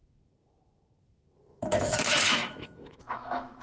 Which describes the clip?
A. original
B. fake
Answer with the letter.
B